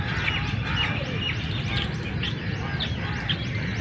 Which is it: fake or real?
real